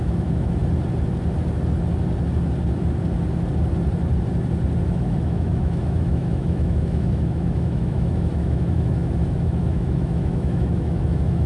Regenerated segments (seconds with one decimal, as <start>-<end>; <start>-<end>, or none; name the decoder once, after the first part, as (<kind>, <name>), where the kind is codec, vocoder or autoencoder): 0.0-0.6 (autoencoder, DAC-VAE); 4.9-11.5